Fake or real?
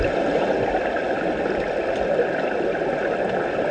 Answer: real